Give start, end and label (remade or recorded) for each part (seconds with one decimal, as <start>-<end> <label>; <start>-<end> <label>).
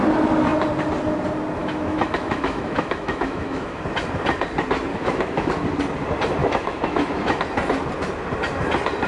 0.0-1.6 recorded; 1.6-3.8 remade; 3.8-4.9 recorded; 4.9-5.5 remade; 5.5-6.4 recorded; 6.4-7.4 remade; 7.4-9.1 recorded